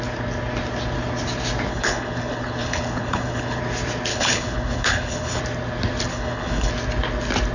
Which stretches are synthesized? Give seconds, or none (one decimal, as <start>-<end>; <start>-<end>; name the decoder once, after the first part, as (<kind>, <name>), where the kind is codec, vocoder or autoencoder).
1.7-3.6 (codec, HILCodec); 4.1-5.4; 6.1-6.7